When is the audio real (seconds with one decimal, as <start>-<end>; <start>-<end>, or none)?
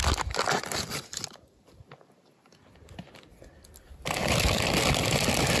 0.0-5.6